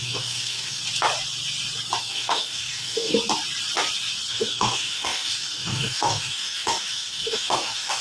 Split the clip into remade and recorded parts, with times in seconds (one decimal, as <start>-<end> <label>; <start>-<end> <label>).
0.0-0.8 remade; 0.8-2.0 recorded; 2.0-3.1 remade; 3.1-4.3 recorded; 4.3-8.0 remade

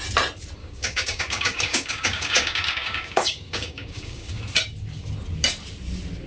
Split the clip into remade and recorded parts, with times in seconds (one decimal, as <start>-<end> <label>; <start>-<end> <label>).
0.0-0.6 recorded; 0.6-4.4 remade; 4.4-6.3 recorded

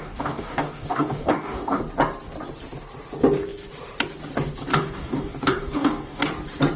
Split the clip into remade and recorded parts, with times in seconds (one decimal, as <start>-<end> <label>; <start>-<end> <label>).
0.0-1.8 remade; 1.8-4.7 recorded; 4.7-6.2 remade; 6.2-6.8 recorded

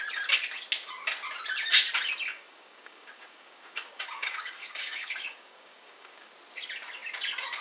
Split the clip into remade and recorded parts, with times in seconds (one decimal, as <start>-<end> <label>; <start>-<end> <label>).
0.0-2.3 recorded; 2.3-6.3 remade; 6.3-7.6 recorded

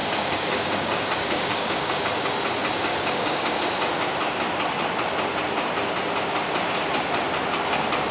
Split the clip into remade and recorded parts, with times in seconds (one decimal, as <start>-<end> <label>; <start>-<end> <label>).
0.0-2.0 remade; 2.0-2.9 recorded; 2.9-3.6 remade; 3.6-8.1 recorded

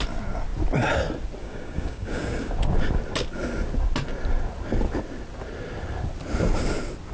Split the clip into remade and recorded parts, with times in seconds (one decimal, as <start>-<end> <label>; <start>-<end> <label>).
0.0-1.4 recorded; 1.4-2.5 remade; 2.5-7.1 recorded

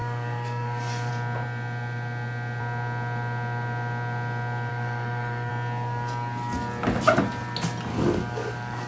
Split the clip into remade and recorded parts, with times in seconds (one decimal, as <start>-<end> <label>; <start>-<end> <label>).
0.0-1.1 remade; 1.1-4.7 recorded; 4.7-5.5 remade; 5.5-7.9 recorded; 7.9-8.9 remade

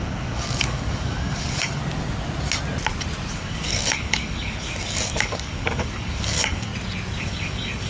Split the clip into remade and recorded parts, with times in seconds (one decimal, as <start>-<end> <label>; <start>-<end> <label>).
0.0-1.8 remade; 1.8-3.3 recorded; 3.3-6.7 remade; 6.7-7.2 recorded; 7.2-7.9 remade